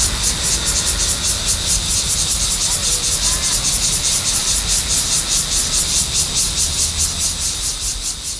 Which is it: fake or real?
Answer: real